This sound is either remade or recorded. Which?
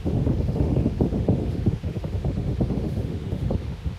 remade